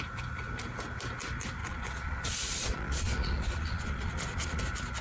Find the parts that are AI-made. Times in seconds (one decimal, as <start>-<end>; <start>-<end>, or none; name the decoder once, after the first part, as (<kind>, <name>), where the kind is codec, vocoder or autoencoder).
1.6-4.6 (vocoder, Vocos)